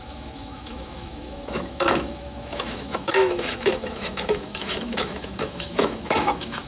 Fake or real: fake